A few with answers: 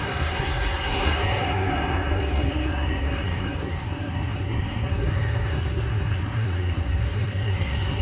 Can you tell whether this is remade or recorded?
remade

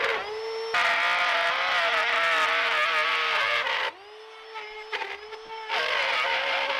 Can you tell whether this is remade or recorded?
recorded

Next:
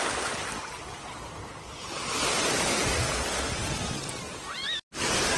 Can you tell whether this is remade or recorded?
recorded